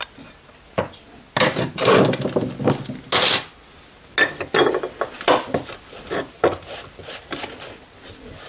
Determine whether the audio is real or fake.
real